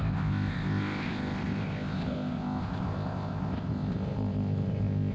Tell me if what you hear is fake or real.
fake